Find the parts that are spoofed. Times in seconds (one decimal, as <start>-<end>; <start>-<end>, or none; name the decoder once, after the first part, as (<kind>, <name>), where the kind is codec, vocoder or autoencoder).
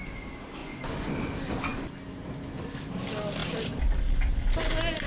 0.6-1.1 (vocoder, Vocos)